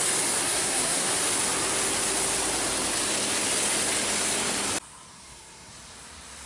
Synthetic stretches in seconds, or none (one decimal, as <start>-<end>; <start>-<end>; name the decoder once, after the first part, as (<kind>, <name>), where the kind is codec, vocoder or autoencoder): 0.4-1.1 (codec, SNAC); 5.1-5.7